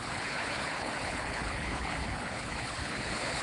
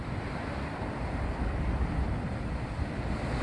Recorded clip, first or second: second